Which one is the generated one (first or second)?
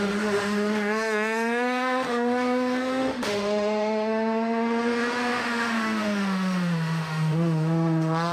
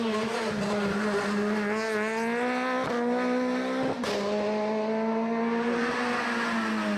first